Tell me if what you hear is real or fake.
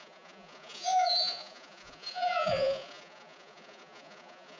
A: fake